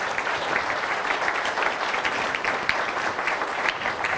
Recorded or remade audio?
remade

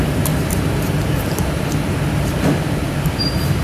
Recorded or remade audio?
remade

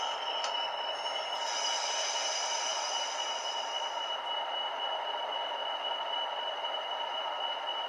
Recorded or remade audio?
recorded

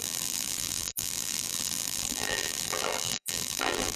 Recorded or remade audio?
remade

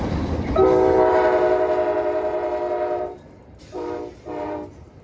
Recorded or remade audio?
remade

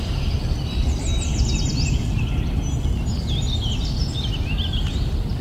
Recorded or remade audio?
recorded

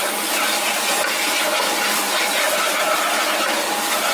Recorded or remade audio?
recorded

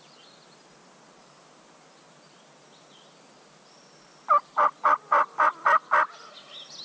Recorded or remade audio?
recorded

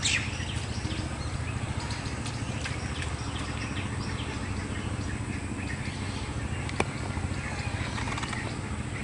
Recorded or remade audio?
recorded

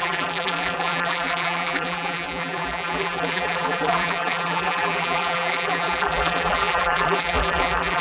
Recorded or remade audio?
remade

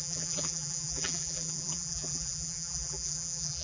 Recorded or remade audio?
remade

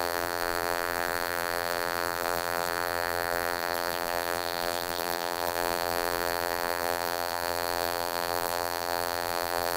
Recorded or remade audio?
remade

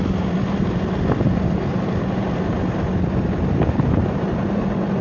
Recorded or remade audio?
recorded